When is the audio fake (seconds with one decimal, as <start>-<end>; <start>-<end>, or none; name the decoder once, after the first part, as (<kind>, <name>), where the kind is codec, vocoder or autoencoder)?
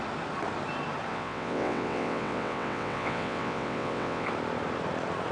1.1-4.3 (vocoder, WaveNeXt)